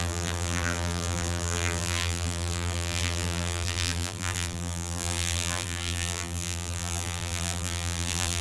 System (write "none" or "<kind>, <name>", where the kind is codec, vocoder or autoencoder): vocoder, BigVGAN v2